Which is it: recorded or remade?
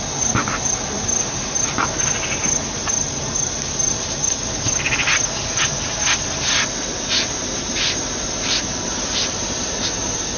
recorded